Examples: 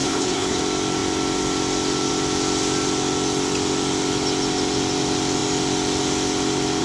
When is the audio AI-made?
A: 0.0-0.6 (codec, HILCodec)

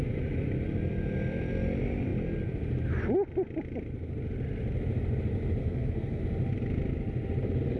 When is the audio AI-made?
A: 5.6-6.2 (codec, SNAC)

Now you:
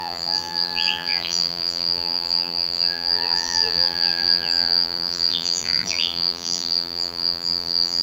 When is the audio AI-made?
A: 0.0-8.0 (vocoder, BigVGAN v2)